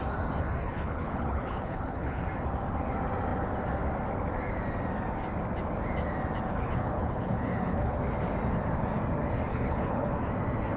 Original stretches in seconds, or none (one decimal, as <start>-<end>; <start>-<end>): 0.0-0.6; 2.2-6.5; 8.0-9.5; 10.1-10.8